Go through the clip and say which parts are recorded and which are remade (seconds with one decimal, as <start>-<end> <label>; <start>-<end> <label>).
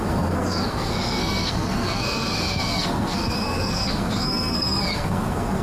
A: 0.0-5.6 remade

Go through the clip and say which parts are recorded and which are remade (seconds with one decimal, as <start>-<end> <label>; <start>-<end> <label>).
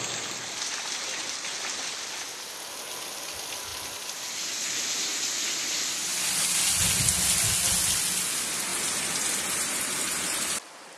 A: 0.0-8.7 recorded; 8.7-10.4 remade; 10.4-11.0 recorded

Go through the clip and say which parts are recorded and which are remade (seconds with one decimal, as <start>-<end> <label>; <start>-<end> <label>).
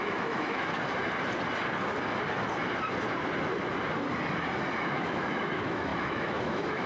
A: 0.0-0.7 remade; 0.7-4.8 recorded; 4.8-6.9 remade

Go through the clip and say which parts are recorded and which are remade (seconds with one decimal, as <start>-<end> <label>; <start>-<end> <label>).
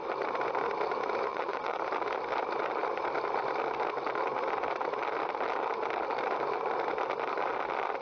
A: 0.0-1.3 recorded; 1.3-1.8 remade; 1.8-8.0 recorded